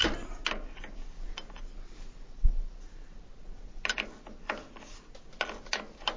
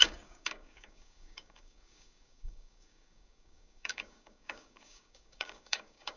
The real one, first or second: first